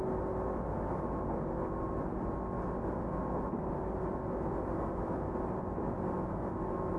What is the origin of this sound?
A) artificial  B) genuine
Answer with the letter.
B